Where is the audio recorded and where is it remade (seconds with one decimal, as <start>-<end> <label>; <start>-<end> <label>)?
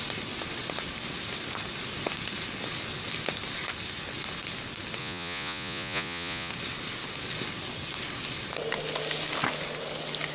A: 0.0-5.0 recorded; 5.0-6.5 remade; 6.5-10.3 recorded